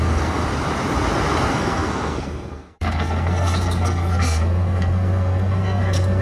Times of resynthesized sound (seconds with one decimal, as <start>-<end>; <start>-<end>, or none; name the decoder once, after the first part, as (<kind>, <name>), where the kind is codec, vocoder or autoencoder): 0.0-0.4 (codec, SNAC); 1.5-6.2